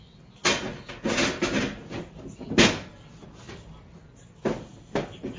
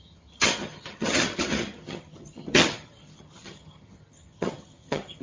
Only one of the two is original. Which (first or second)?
first